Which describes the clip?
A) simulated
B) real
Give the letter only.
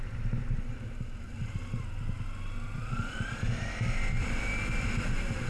B